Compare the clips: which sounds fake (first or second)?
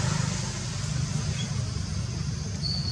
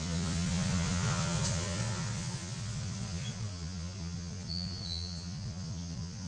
second